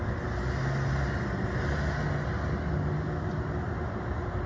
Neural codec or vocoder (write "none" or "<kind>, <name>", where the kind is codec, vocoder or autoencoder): none